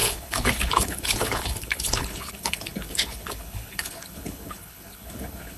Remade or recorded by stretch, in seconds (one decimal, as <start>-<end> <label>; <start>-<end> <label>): 0.0-5.6 remade